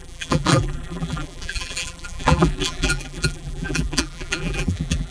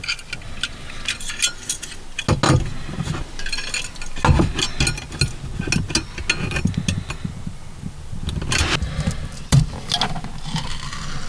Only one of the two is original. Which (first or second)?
second